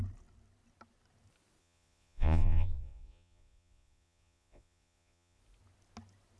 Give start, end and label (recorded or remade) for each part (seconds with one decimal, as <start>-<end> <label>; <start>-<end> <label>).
0.0-1.6 recorded; 1.6-5.4 remade; 5.4-6.4 recorded